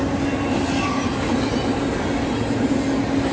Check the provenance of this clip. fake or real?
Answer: real